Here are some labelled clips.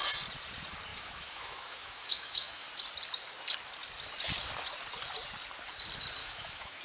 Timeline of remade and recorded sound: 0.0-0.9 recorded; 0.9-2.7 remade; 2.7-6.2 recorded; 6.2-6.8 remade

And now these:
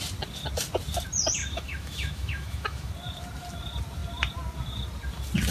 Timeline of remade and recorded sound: 0.0-1.4 recorded; 1.4-2.9 remade; 2.9-5.5 recorded

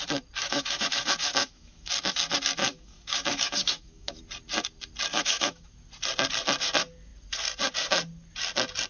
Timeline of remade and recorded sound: 0.0-0.4 recorded; 0.4-1.9 remade; 1.9-2.6 recorded; 2.6-4.2 remade; 4.2-5.1 recorded; 5.1-5.7 remade; 5.7-8.9 recorded

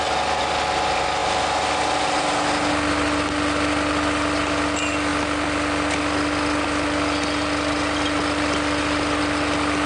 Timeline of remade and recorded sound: 0.0-9.9 recorded

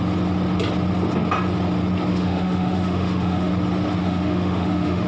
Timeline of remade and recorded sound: 0.0-2.1 recorded; 2.1-3.5 remade; 3.5-4.0 recorded; 4.0-5.1 remade

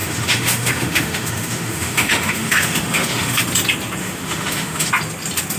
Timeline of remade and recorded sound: 0.0-3.4 remade; 3.4-4.0 recorded; 4.0-4.9 remade; 4.9-5.6 recorded

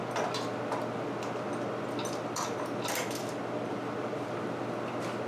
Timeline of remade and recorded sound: 0.0-5.3 recorded

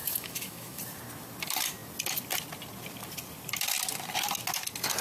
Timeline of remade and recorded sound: 0.0-0.8 remade; 0.8-5.0 recorded